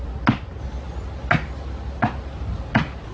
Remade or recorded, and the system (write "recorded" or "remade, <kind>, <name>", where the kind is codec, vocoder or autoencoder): recorded